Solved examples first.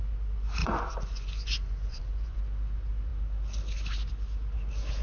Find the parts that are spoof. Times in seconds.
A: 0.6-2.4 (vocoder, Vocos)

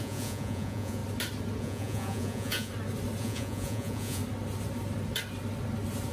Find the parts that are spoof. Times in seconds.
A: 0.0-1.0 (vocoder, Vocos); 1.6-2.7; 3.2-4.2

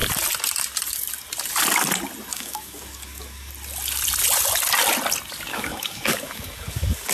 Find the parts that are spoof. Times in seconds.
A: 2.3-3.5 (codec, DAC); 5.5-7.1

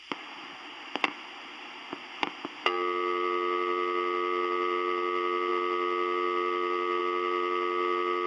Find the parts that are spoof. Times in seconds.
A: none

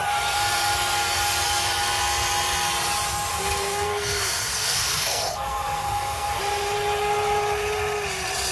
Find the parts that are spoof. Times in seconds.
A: 3.3-6.4 (codec, SNAC)